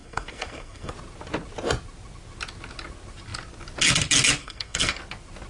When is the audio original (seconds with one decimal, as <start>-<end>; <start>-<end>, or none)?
0.9-4.4; 5.0-5.5